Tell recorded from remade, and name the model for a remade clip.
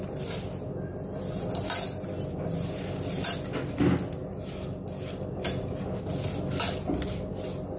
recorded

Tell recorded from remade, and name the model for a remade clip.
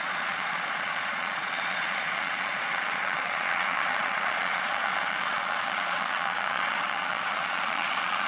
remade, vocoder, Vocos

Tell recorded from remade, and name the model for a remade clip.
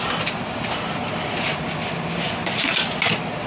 recorded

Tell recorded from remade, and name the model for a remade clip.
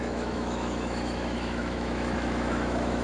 remade, autoencoder, DAC-VAE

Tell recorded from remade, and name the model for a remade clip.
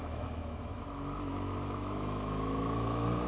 remade, autoencoder, DAC-VAE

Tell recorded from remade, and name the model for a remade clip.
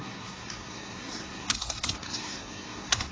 remade, codec, SNAC